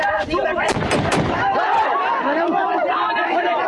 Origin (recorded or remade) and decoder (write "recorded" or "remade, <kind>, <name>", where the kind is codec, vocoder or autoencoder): remade, vocoder, BigVGAN v2